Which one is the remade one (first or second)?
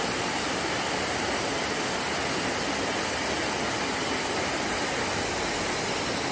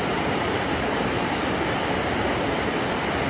second